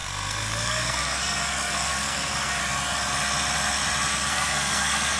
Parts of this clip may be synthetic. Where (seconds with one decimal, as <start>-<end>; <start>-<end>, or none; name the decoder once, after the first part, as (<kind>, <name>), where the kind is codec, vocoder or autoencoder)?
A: 0.0-2.6 (codec, SNAC); 4.1-5.2